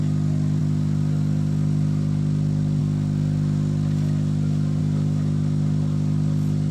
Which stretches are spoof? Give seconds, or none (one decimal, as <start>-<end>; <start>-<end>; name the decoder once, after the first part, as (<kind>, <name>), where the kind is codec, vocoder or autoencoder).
none